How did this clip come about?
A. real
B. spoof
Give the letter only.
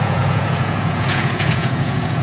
B